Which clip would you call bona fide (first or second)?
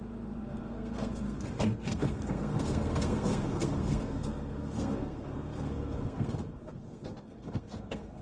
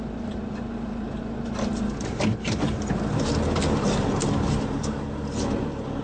second